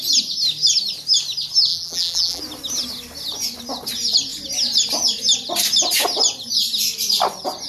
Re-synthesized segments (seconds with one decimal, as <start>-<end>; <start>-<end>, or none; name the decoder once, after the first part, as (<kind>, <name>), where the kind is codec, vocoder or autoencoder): 1.7-2.4 (vocoder, BigVGAN v2)

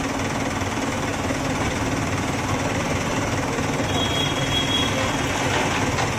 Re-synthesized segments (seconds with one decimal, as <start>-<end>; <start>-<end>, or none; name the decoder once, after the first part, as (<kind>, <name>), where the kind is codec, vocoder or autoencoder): 1.1-4.8 (vocoder, BigVGAN v2)

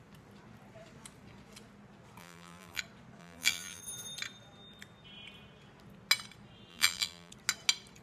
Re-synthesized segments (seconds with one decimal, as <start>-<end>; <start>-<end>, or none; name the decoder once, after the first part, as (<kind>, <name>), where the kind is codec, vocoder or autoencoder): 2.2-2.8 (vocoder, BigVGAN v2); 3.2-3.8; 6.7-7.3

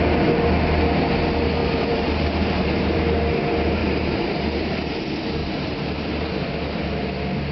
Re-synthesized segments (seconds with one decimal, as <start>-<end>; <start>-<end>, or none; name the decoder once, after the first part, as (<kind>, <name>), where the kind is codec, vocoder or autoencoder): 1.6-3.0 (vocoder, BigVGAN v2); 3.8-4.9; 5.4-6.5

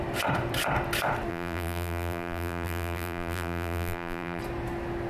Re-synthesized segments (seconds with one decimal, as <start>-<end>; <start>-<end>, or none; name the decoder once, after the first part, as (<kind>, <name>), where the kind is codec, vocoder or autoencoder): 1.3-4.4 (vocoder, BigVGAN v2)

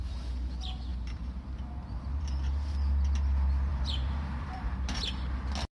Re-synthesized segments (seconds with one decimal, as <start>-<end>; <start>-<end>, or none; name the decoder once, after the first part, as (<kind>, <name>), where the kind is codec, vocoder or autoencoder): 0.9-2.3 (vocoder, BigVGAN v2); 3.7-5.1

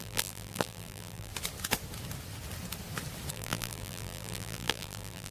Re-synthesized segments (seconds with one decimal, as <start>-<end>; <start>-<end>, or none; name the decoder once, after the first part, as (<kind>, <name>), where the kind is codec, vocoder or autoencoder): 0.0-1.3 (vocoder, BigVGAN v2); 3.3-5.3

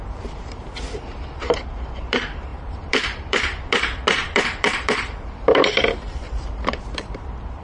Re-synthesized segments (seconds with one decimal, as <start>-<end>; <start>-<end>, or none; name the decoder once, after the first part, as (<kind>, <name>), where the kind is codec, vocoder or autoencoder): 0.0-0.6 (vocoder, BigVGAN v2); 1.1-7.6